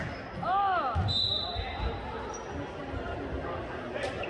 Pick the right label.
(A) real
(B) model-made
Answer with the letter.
A